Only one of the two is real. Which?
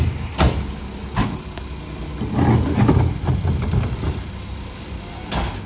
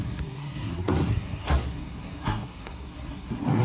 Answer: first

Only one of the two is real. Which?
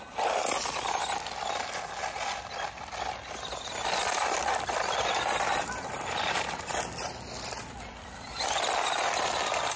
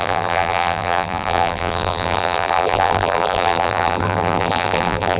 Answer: first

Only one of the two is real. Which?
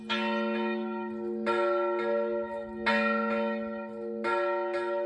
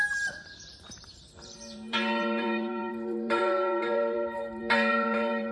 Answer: first